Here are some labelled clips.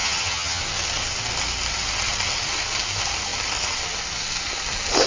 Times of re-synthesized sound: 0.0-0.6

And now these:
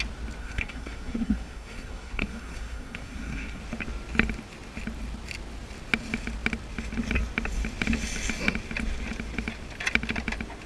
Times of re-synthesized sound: 0.4-3.6

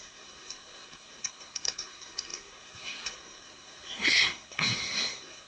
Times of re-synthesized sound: 0.0-5.5

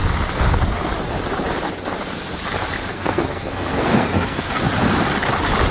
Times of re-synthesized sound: 2.9-4.6

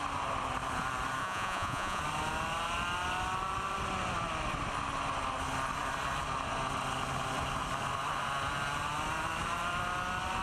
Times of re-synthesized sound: 1.2-2.0

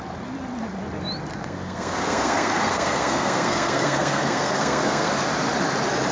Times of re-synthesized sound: 1.4-5.1